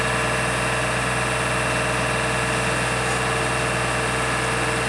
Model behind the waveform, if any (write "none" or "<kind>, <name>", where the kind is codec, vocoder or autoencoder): none